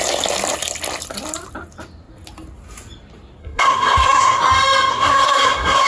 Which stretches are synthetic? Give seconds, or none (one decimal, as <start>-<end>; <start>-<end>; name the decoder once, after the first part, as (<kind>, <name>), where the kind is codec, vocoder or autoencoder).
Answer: 3.4-4.4 (codec, SNAC); 4.9-5.9

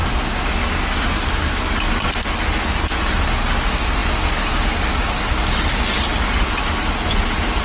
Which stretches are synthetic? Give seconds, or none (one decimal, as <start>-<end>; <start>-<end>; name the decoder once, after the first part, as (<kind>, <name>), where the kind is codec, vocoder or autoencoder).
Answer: none

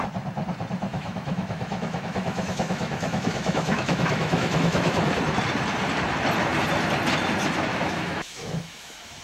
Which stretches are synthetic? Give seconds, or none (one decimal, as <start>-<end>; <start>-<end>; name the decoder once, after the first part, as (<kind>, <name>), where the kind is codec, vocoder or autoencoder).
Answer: 0.9-5.0 (autoencoder, DAC-VAE); 7.7-9.2

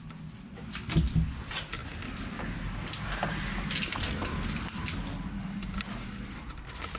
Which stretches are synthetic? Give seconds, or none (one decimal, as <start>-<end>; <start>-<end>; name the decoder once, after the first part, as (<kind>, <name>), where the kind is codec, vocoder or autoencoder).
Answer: none

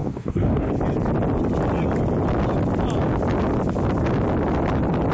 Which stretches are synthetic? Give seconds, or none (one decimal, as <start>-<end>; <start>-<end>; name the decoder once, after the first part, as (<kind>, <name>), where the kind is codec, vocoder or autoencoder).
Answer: 0.0-0.7 (codec, DAC)

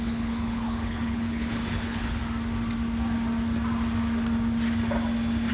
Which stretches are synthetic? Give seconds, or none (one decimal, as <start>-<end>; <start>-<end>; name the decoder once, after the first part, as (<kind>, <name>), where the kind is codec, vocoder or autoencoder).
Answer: 0.0-2.2 (codec, HILCodec)

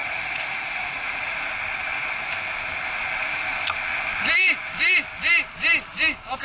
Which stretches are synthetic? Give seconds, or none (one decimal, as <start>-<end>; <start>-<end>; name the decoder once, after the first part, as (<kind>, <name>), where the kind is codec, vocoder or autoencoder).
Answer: 0.0-1.5 (vocoder, Vocos)

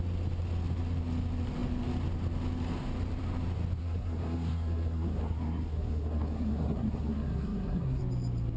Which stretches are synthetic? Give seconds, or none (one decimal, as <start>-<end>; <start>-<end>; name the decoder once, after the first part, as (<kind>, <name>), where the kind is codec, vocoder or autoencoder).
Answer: 3.8-8.0 (codec, SNAC)